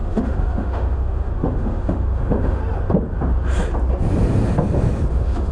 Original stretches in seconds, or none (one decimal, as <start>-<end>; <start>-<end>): 2.6-5.1